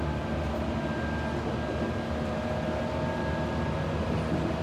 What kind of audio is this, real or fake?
real